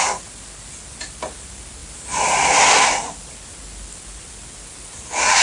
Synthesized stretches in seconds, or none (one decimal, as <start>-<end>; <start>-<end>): none